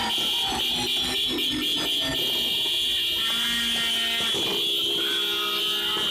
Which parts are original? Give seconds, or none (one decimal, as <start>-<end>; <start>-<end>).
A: 0.0-6.1